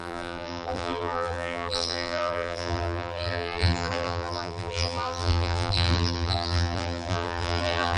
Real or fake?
fake